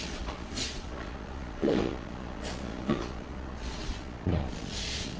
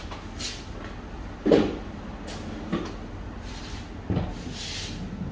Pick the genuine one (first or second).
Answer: second